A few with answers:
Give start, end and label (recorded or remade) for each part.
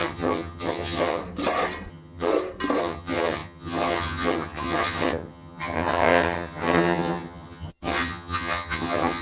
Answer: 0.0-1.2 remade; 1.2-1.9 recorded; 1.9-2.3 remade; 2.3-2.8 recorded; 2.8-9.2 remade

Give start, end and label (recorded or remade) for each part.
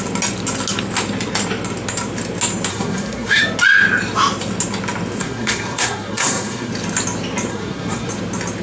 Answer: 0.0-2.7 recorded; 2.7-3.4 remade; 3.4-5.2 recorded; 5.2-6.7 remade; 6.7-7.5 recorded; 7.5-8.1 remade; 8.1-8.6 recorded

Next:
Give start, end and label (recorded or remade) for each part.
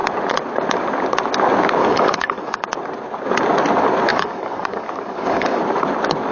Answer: 0.0-1.8 recorded; 1.8-2.6 remade; 2.6-4.1 recorded; 4.1-5.6 remade; 5.6-6.3 recorded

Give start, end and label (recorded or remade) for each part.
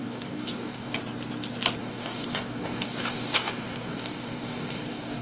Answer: 0.0-1.0 remade; 1.0-1.8 recorded; 1.8-5.2 remade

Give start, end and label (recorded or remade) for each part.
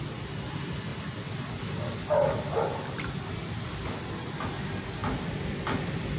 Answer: 0.0-6.2 recorded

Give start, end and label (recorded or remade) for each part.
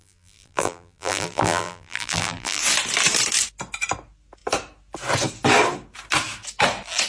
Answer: 0.0-2.6 remade; 2.6-7.1 recorded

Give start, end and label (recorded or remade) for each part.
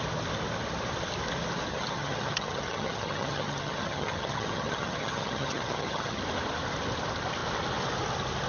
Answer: 0.0-1.7 recorded; 1.7-6.2 remade; 6.2-8.5 recorded